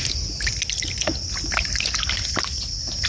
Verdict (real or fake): real